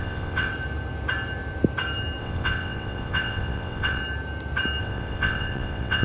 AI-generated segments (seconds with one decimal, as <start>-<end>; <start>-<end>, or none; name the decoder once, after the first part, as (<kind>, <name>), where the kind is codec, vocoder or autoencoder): 0.0-0.5 (vocoder, WaveNeXt); 2.2-4.0; 4.8-6.0